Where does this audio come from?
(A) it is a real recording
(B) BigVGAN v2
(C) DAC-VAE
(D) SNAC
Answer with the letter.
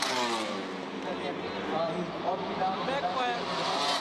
A